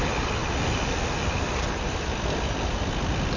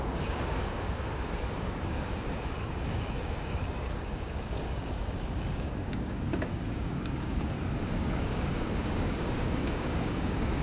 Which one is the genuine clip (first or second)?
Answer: first